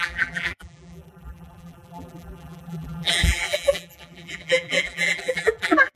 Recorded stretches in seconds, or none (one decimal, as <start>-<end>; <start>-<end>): none